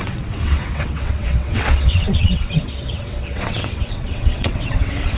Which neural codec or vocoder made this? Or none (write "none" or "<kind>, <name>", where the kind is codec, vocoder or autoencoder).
vocoder, WaveNeXt